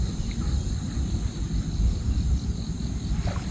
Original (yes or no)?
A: no